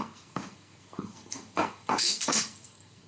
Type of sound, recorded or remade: remade